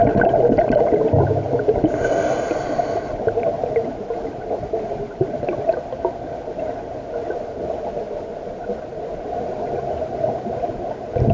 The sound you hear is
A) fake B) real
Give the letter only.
B